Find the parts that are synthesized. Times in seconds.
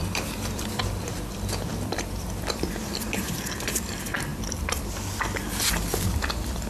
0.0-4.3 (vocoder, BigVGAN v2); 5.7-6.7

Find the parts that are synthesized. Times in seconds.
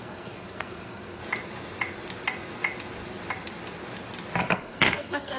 0.0-1.2 (codec, SNAC); 4.4-5.4